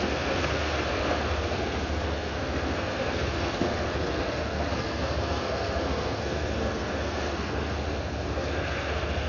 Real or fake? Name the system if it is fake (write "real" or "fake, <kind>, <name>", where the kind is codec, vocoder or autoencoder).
fake, codec, SNAC